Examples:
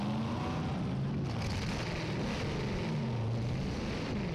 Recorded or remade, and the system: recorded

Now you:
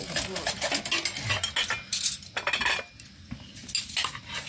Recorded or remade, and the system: recorded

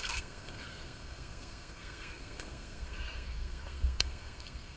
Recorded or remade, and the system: remade, codec, SNAC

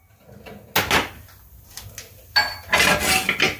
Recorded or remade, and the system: recorded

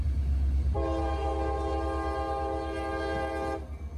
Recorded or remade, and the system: recorded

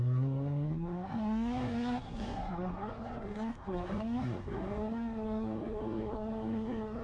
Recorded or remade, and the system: remade, codec, SNAC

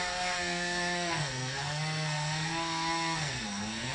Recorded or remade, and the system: remade, codec, SNAC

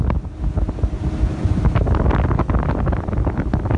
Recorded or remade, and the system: recorded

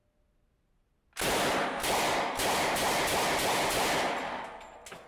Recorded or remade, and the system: recorded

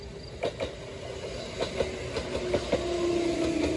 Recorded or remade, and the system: recorded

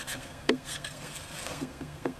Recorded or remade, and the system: remade, codec, SNAC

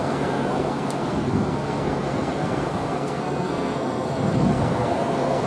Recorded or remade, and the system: remade, codec, SNAC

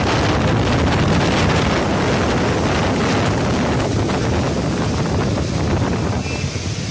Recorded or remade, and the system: recorded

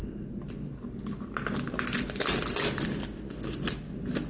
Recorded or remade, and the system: recorded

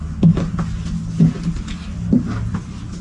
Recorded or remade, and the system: recorded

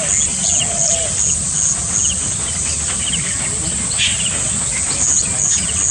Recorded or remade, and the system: recorded